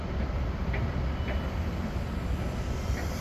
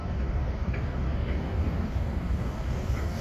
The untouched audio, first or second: first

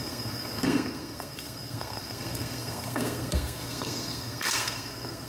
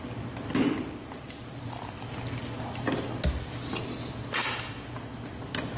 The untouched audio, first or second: second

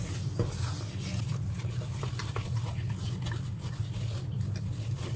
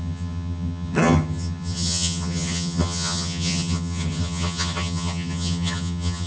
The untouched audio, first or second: first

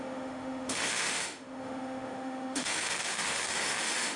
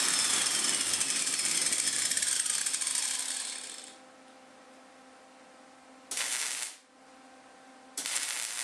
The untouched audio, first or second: second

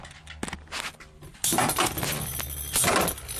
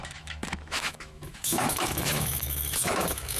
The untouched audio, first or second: first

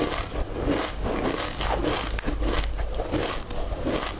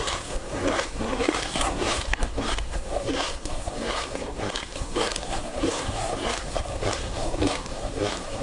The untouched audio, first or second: first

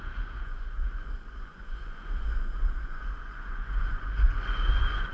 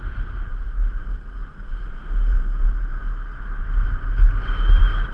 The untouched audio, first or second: second